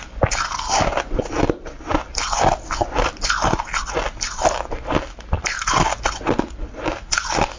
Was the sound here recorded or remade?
recorded